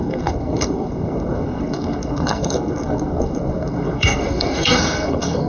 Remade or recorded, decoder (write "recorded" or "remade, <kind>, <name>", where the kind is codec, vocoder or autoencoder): remade, codec, SNAC